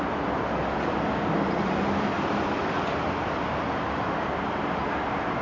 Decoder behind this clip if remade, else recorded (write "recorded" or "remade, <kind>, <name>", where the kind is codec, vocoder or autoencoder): recorded